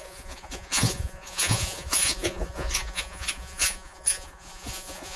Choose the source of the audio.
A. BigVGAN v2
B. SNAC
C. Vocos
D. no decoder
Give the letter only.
C